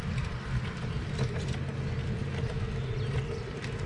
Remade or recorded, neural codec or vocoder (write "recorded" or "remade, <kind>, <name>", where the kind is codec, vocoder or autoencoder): recorded